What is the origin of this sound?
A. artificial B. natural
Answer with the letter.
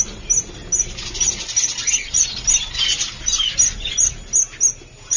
B